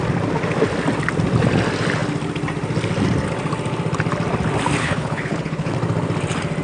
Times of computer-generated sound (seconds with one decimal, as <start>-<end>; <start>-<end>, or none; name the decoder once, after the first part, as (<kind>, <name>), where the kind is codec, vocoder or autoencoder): 4.8-5.7 (codec, HILCodec)